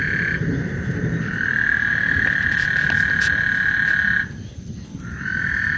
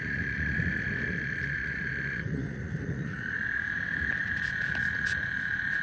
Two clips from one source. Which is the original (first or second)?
first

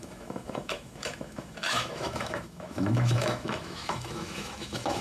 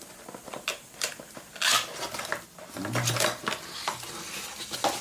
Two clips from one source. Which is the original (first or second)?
second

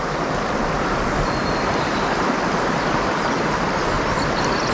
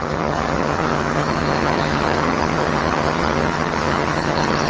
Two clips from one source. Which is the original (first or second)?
first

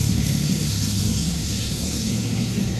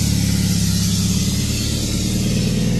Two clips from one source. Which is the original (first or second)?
second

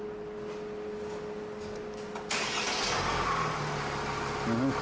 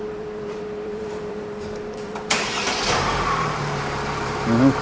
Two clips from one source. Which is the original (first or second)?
first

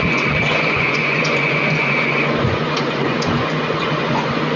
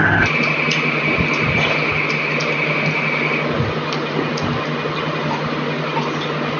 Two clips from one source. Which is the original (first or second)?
second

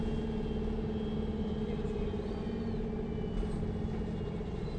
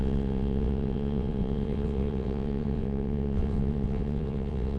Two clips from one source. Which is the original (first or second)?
first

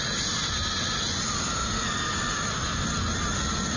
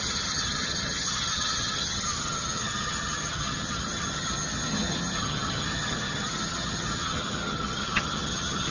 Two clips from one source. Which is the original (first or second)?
first